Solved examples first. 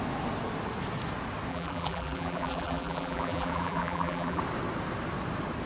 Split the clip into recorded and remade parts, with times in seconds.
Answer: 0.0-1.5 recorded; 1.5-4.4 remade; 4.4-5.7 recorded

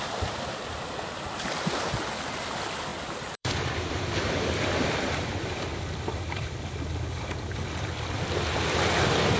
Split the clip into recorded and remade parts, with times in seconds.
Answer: 0.0-2.9 recorded; 2.9-6.6 remade; 6.6-9.4 recorded

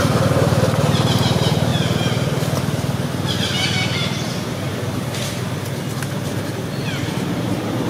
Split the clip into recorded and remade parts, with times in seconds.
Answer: 0.0-1.7 remade; 1.7-6.4 recorded; 6.4-7.9 remade

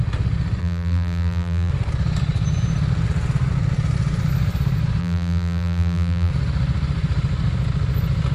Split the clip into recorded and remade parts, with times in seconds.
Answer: 0.0-0.6 recorded; 0.6-1.7 remade; 1.7-5.0 recorded; 5.0-6.3 remade; 6.3-8.3 recorded

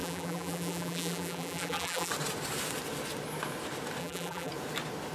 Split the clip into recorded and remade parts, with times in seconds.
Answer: 0.0-2.1 remade; 2.1-4.0 recorded; 4.0-4.5 remade; 4.5-5.1 recorded

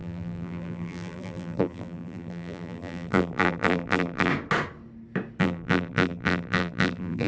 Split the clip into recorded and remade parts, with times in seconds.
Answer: 0.0-4.3 remade; 4.3-5.4 recorded; 5.4-7.3 remade

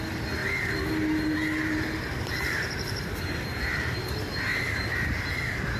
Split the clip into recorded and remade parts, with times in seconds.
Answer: 0.0-0.4 recorded; 0.4-3.9 remade; 3.9-5.8 recorded